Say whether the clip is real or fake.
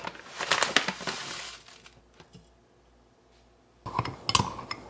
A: real